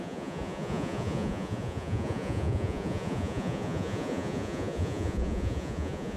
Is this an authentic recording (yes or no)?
no